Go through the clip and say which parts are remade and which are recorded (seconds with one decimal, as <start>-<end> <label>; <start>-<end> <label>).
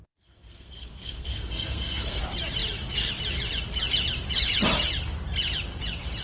0.0-2.2 remade; 2.2-6.2 recorded